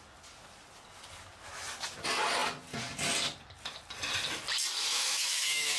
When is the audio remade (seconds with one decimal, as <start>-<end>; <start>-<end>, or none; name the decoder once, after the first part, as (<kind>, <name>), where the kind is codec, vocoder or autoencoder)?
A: 4.9-5.8 (autoencoder, DAC-VAE)